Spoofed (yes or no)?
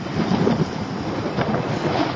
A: no